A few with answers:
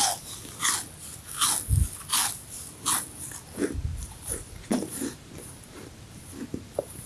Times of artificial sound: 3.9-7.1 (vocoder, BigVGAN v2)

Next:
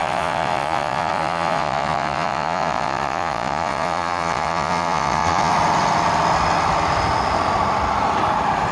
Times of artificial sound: 0.0-5.5 (vocoder, Vocos)

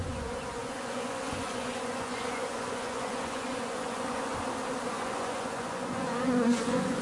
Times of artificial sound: 0.0-4.3 (vocoder, Vocos); 4.9-7.0

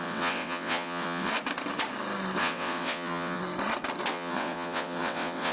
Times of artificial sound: 0.0-1.3 (vocoder, WaveNeXt); 2.4-3.4; 4.1-5.5

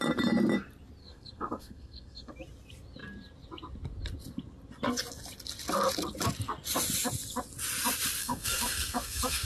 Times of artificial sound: 1.0-2.3 (codec, SNAC); 8.2-9.5

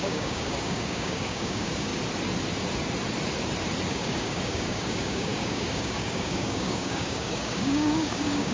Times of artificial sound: 0.0-1.9 (codec, DAC); 3.9-8.5

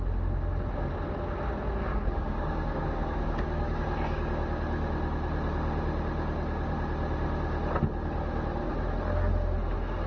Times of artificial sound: 1.9-3.8 (codec, DAC)